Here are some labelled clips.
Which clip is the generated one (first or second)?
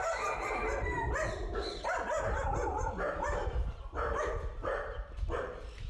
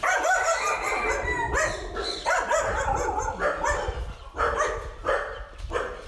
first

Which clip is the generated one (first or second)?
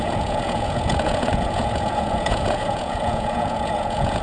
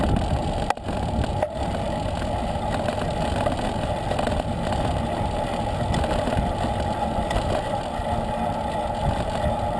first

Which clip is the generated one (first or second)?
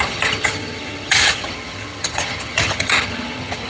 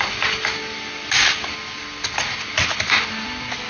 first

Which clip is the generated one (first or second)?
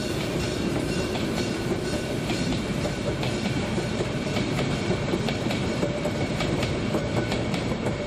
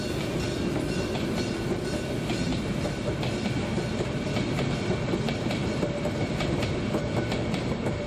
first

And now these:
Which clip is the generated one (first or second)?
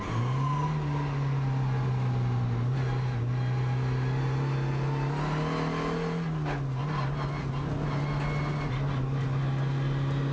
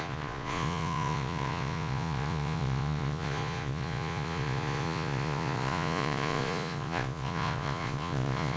second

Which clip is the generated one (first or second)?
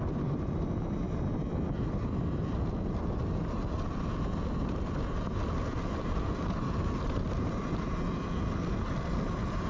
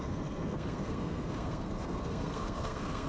second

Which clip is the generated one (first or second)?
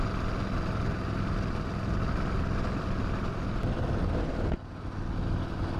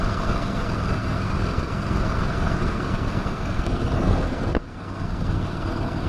second